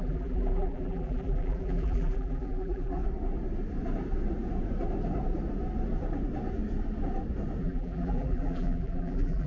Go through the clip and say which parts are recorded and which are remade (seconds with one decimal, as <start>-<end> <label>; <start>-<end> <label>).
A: 0.0-3.0 remade; 3.0-7.6 recorded; 7.6-9.5 remade